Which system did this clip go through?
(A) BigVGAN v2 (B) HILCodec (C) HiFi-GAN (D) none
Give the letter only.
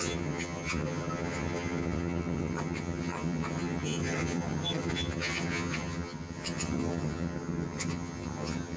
C